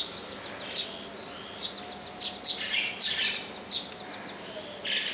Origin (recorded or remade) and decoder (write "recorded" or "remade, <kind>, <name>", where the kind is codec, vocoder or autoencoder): recorded